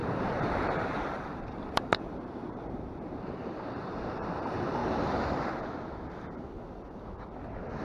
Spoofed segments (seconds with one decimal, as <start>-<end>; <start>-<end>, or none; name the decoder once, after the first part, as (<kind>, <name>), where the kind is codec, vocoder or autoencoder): 0.0-4.8 (vocoder, BigVGAN v2)